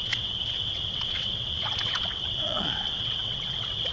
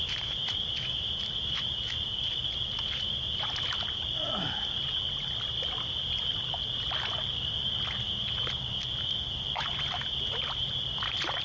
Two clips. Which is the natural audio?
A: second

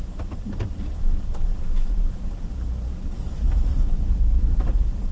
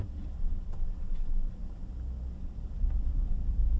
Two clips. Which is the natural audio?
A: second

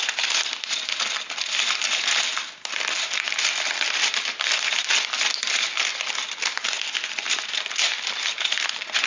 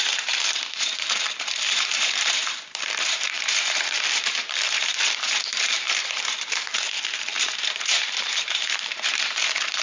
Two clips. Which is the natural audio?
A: first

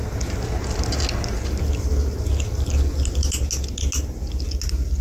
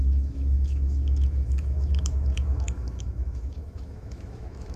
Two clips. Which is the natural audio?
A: first